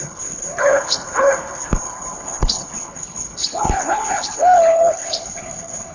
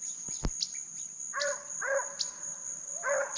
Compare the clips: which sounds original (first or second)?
second